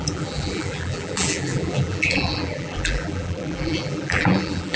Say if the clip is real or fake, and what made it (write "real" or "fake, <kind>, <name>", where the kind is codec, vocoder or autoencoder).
fake, vocoder, BigVGAN v2